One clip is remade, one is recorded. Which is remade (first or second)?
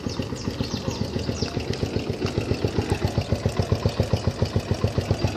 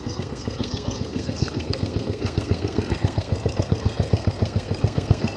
second